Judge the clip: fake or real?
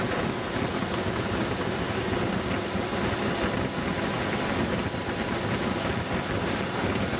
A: real